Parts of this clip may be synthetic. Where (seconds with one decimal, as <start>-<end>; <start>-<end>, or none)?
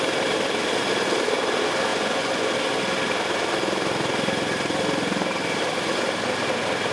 1.9-2.5